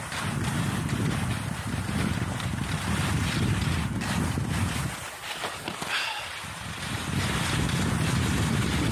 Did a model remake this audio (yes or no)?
no